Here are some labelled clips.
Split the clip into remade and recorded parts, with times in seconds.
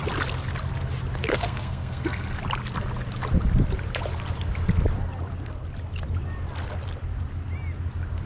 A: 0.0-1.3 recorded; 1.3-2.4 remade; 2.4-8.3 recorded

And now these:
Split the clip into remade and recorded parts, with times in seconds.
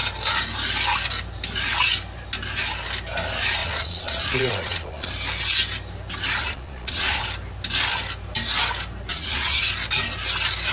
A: 0.0-3.6 recorded; 3.6-5.1 remade; 5.1-6.4 recorded; 6.4-7.2 remade; 7.2-9.1 recorded; 9.1-9.6 remade; 9.6-10.7 recorded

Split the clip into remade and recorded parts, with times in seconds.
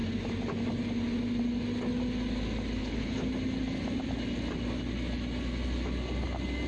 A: 0.0-2.8 recorded; 2.8-3.3 remade; 3.3-6.7 recorded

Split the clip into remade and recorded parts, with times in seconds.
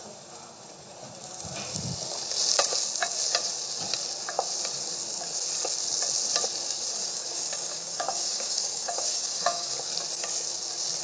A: 0.0-7.0 recorded; 7.0-9.7 remade; 9.7-11.0 recorded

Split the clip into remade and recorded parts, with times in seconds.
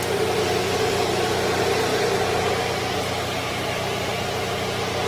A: 0.0-5.1 recorded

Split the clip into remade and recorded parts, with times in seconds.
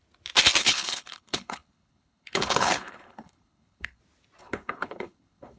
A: 0.0-0.6 recorded; 0.6-4.0 remade; 4.0-4.4 recorded; 4.4-5.6 remade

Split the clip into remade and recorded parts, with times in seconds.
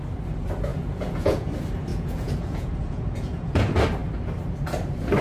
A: 0.0-0.7 recorded; 0.7-1.5 remade; 1.5-1.9 recorded; 1.9-3.6 remade; 3.6-5.2 recorded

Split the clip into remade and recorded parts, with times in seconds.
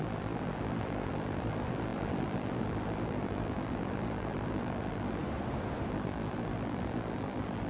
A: 0.0-5.2 remade; 5.2-5.9 recorded; 5.9-7.7 remade